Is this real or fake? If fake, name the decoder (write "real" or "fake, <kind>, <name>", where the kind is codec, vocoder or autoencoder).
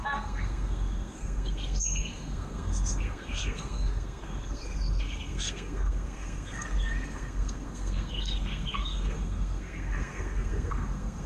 fake, codec, SNAC